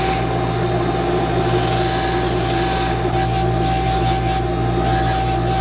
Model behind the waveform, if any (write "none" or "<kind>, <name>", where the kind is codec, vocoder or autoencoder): none